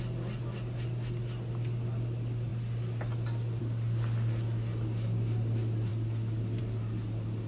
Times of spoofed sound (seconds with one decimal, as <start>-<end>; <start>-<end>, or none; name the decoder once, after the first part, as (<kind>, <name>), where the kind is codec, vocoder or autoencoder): none